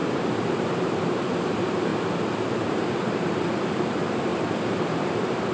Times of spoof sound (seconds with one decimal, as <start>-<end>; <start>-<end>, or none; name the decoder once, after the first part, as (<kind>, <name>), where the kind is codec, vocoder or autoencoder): 0.6-1.9 (vocoder, BigVGAN v2); 2.7-5.5